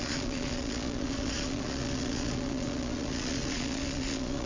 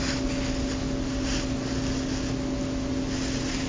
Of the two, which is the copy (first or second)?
first